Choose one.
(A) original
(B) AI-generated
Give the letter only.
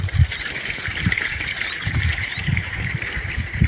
B